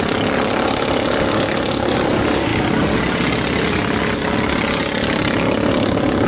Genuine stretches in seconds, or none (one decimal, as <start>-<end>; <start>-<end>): 0.0-6.3